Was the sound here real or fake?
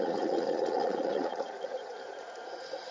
fake